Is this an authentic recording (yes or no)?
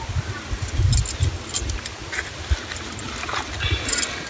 yes